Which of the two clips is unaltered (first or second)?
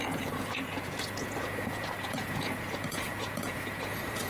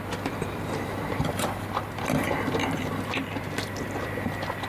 second